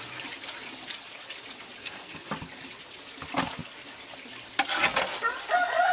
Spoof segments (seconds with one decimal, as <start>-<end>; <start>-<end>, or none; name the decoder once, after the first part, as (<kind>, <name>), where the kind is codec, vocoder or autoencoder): 1.8-2.3 (codec, SNAC)